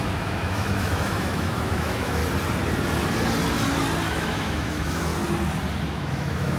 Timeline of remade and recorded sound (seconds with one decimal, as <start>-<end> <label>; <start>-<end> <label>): 0.0-2.2 remade; 2.2-4.1 recorded; 4.1-5.1 remade; 5.1-5.9 recorded; 5.9-6.6 remade